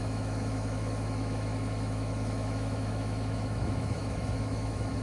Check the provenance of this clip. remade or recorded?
remade